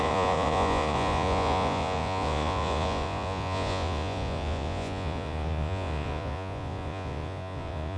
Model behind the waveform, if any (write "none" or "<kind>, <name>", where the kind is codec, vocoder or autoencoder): vocoder, Vocos